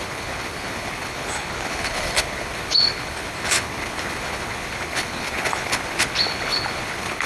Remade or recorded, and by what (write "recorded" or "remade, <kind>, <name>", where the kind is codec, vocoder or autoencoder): remade, codec, HILCodec